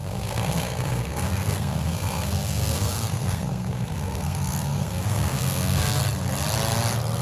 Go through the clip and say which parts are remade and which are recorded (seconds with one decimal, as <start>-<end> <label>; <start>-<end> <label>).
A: 0.0-6.0 remade; 6.0-7.2 recorded